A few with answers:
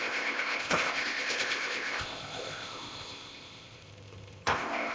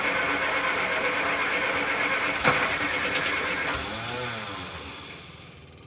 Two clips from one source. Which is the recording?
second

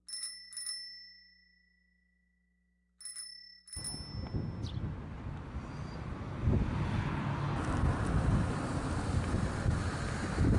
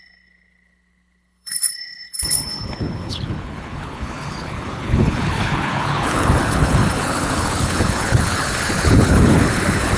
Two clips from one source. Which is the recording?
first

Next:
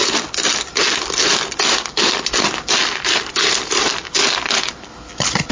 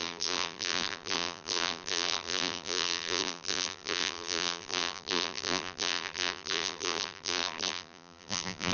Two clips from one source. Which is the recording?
first